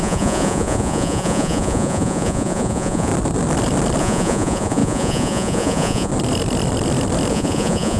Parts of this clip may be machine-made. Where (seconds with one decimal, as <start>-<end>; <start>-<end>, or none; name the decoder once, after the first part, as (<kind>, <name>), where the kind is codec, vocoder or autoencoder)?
0.0-3.1 (vocoder, Vocos); 4.0-6.1; 7.3-8.0

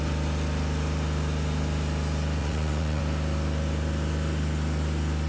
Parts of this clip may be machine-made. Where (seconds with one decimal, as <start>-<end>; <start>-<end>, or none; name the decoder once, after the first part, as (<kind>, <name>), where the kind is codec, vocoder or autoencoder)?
2.4-3.0 (vocoder, Vocos)

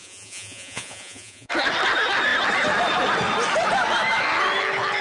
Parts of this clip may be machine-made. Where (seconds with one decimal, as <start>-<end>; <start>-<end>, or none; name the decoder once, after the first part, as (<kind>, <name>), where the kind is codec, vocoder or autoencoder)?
0.0-1.5 (vocoder, Vocos)

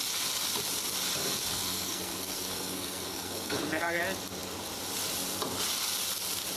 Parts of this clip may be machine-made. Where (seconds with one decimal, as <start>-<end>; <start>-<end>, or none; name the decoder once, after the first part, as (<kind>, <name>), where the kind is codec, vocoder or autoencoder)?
1.2-4.0 (codec, SNAC)